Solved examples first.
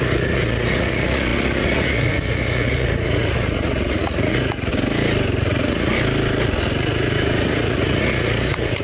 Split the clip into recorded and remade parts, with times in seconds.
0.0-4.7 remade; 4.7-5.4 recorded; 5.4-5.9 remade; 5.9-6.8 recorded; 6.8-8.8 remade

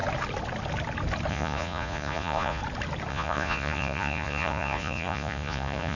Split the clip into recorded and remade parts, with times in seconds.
0.0-1.3 recorded; 1.3-2.6 remade; 2.6-3.1 recorded; 3.1-5.9 remade

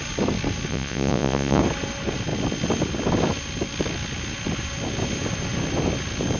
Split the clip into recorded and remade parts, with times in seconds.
0.0-0.7 recorded; 0.7-1.6 remade; 1.6-6.4 recorded

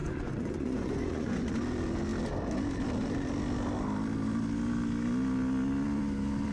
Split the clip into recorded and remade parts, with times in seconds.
0.0-1.5 remade; 1.5-6.5 recorded